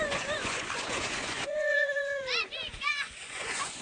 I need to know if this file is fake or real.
fake